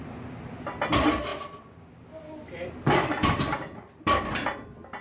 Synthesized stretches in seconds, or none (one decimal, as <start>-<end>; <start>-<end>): none